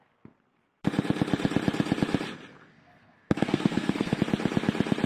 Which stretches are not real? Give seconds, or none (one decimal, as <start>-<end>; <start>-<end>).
2.7-4.2